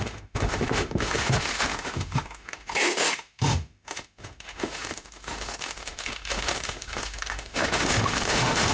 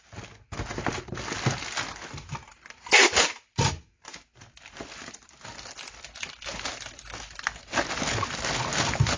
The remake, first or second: first